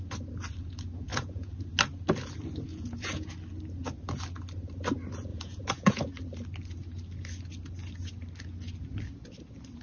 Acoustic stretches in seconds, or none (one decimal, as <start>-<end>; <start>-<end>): 0.0-1.1; 1.7-2.7; 3.3-5.3; 6.0-9.8